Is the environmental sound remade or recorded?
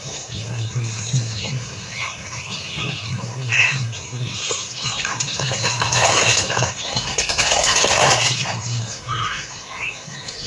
remade